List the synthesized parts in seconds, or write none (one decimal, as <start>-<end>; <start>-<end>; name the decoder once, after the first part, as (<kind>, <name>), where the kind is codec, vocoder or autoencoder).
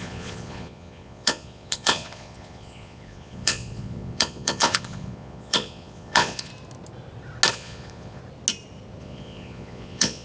0.0-6.5 (vocoder, Vocos); 7.5-8.2; 9.0-10.2